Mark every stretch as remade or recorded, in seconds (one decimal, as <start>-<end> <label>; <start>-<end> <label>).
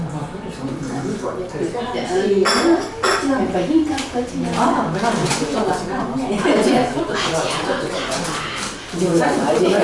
0.0-5.2 recorded; 5.2-8.2 remade; 8.2-9.8 recorded